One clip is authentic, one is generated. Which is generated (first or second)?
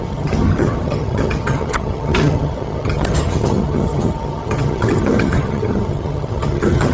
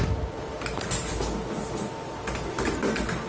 first